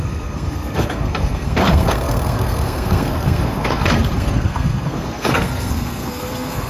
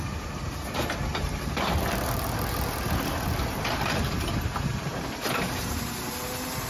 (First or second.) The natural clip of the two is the second